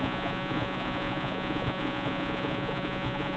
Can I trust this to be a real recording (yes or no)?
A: no